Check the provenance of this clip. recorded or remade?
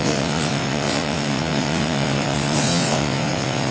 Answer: remade